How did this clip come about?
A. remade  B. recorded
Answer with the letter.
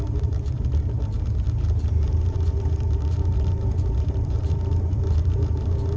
A